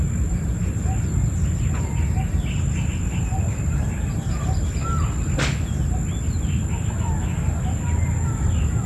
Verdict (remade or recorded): recorded